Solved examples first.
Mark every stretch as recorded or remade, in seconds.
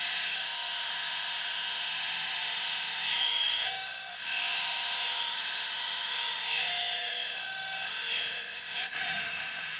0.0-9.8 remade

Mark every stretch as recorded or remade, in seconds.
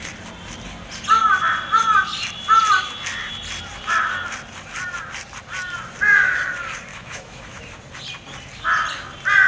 0.0-6.9 recorded; 6.9-7.6 remade; 7.6-9.5 recorded